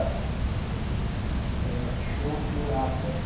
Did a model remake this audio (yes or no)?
no